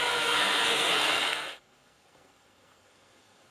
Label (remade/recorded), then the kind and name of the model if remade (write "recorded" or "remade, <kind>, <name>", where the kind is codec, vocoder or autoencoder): remade, codec, SNAC